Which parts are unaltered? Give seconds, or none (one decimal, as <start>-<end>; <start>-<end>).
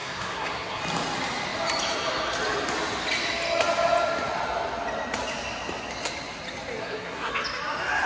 0.8-6.8; 7.3-8.1